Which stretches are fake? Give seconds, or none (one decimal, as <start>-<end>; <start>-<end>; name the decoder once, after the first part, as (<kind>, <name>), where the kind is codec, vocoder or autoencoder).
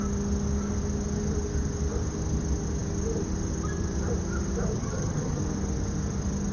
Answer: 4.7-5.4 (vocoder, HiFi-GAN)